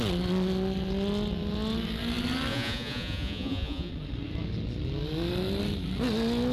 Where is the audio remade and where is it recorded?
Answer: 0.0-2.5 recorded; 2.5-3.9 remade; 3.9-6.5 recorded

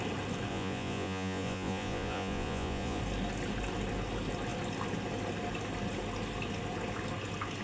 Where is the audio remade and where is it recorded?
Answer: 0.0-0.5 recorded; 0.5-3.0 remade; 3.0-7.6 recorded

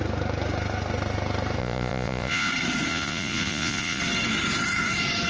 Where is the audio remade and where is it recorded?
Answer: 0.0-1.6 recorded; 1.6-2.5 remade; 2.5-2.9 recorded; 2.9-4.0 remade; 4.0-5.3 recorded